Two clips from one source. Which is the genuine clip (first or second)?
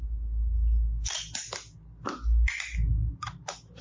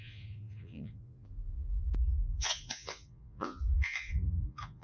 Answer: first